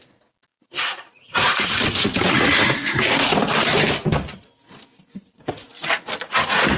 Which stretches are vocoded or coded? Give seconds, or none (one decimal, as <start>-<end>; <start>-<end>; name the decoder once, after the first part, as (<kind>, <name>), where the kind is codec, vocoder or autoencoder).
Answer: 0.5-1.7 (vocoder, Vocos)